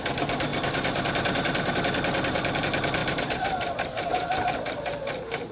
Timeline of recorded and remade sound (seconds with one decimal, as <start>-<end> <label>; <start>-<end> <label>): 0.0-5.5 recorded